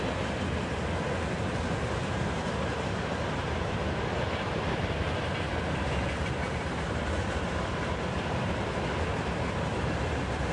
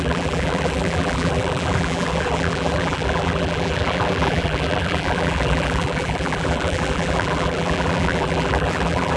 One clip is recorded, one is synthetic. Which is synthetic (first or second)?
second